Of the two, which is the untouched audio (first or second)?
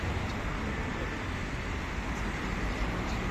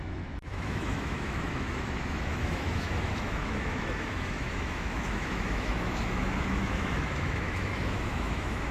first